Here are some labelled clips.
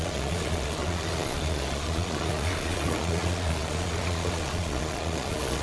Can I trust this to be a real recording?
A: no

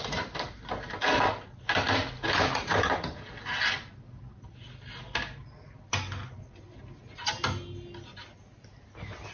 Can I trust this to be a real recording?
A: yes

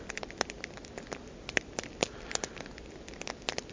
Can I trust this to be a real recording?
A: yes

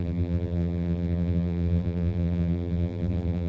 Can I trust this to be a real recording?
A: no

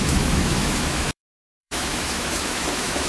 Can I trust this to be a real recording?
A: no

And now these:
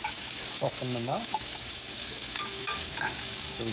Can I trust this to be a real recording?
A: no